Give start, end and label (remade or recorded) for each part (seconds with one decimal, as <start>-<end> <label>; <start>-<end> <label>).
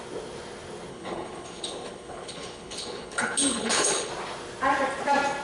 0.0-0.9 recorded; 0.9-4.1 remade; 4.1-5.4 recorded